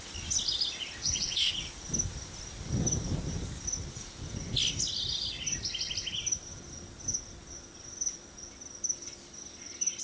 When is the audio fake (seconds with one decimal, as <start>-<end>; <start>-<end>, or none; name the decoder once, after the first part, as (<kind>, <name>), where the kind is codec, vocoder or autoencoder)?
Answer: 1.0-1.5 (vocoder, WaveNeXt)